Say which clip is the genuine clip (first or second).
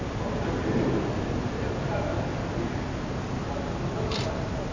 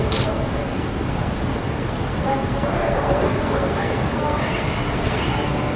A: first